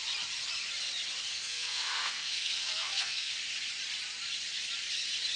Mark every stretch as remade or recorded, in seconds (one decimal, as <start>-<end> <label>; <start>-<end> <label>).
0.0-1.3 recorded; 1.3-3.3 remade; 3.3-5.4 recorded